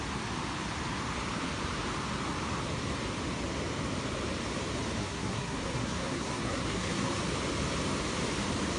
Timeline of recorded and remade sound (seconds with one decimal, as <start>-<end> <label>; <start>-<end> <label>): 0.0-5.0 recorded; 5.0-7.2 remade; 7.2-8.8 recorded